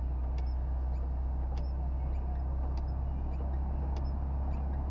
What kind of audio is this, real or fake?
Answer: real